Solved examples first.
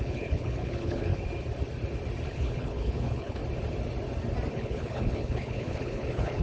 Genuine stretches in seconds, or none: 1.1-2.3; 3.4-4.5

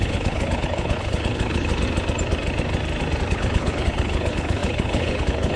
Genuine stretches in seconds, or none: 1.7-3.3